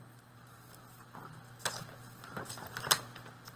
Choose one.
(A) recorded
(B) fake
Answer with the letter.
A